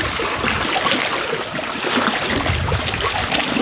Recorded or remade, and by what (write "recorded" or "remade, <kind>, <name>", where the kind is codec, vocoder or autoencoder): recorded